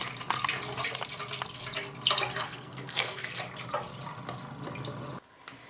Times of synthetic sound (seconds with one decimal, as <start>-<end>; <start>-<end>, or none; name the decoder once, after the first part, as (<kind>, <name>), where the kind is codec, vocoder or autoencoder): 2.4-3.4 (codec, SNAC)